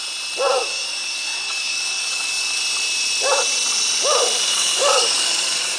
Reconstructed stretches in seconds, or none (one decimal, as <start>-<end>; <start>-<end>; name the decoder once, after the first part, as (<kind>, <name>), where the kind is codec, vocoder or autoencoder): 0.5-2.6 (codec, DAC); 4.5-5.8